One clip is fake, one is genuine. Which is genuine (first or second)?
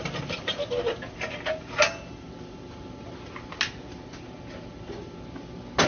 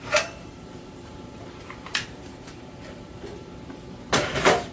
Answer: first